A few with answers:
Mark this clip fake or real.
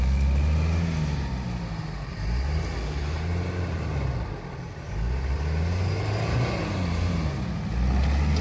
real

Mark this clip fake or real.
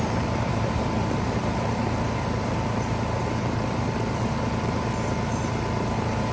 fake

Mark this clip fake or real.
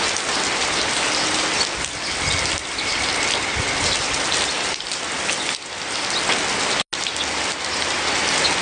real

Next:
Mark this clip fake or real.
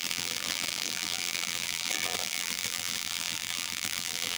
fake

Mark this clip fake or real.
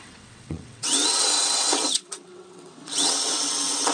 fake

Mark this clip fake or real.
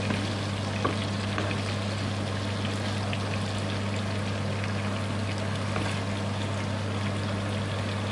real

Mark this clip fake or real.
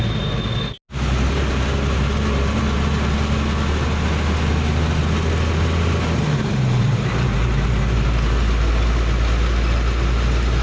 real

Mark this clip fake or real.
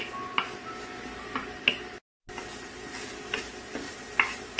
real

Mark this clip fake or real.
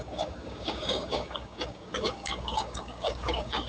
fake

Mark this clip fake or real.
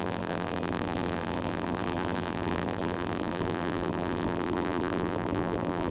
fake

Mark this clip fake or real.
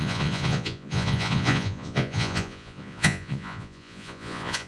fake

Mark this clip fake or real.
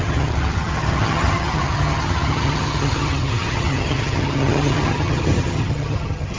fake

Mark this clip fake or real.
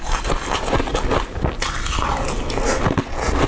real